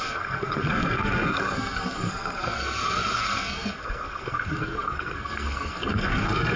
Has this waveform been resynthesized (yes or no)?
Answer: yes